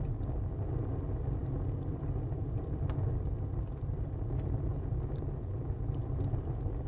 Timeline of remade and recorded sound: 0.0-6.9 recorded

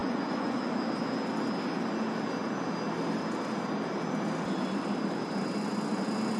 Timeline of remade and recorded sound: 0.0-0.6 remade; 0.6-6.4 recorded

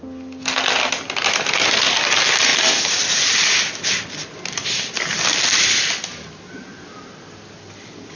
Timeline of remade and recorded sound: 0.0-8.2 recorded